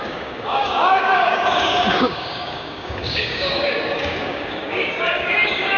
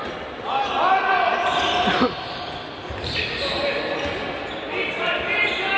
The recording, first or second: second